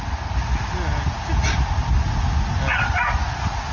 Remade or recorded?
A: recorded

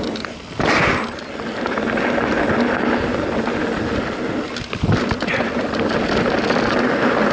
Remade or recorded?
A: recorded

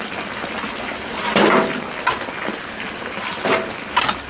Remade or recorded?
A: recorded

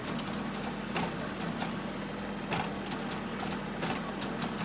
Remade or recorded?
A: recorded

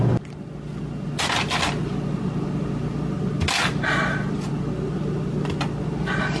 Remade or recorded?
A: recorded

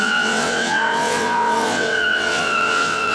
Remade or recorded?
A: remade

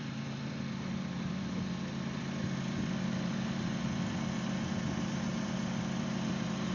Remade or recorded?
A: remade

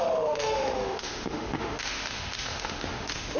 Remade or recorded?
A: remade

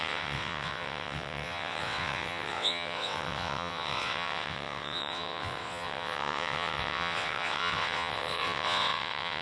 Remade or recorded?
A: remade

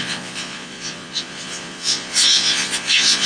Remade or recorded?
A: remade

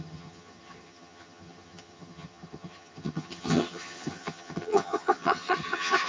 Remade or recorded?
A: remade